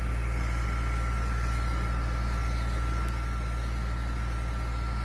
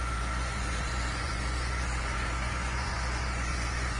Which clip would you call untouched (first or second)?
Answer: first